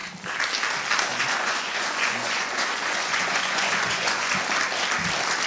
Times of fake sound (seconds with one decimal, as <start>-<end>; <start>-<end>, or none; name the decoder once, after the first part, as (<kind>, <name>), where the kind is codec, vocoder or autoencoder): 1.1-4.4 (vocoder, Vocos)